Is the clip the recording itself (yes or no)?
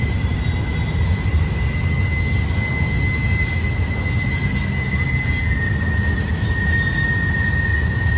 yes